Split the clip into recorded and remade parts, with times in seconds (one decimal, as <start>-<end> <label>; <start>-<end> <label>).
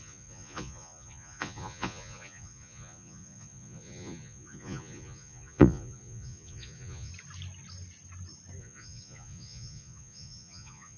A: 0.0-7.1 remade; 7.1-8.6 recorded; 8.6-11.0 remade